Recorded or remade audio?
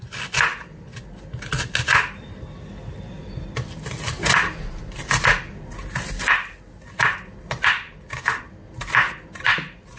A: recorded